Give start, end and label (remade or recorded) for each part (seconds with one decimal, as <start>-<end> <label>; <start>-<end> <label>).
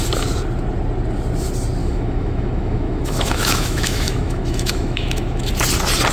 0.0-1.8 recorded; 1.8-5.5 remade; 5.5-6.1 recorded